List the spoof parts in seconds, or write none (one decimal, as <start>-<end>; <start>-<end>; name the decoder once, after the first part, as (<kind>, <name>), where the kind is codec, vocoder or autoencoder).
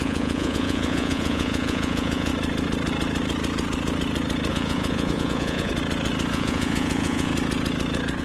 0.0-2.3 (vocoder, Vocos); 4.5-5.7; 6.3-7.3